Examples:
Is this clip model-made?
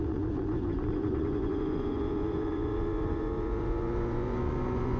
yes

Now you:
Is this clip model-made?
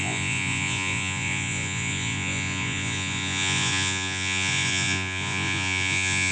yes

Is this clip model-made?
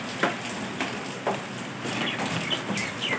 no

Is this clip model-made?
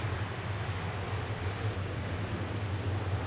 no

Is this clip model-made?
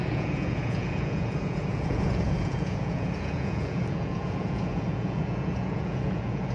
yes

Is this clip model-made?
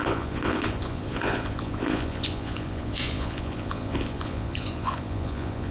yes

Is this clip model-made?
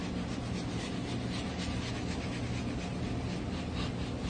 no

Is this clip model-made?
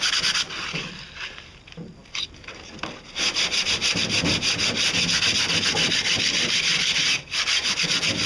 no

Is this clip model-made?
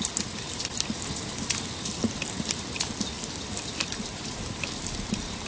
no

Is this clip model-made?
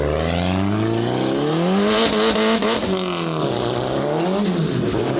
no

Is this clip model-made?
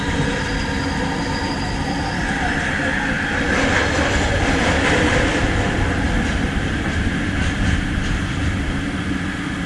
no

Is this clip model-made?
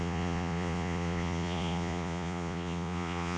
yes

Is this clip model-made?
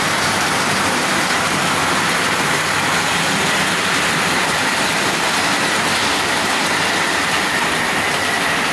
no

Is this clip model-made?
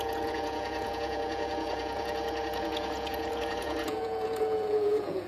yes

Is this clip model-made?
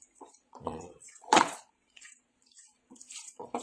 yes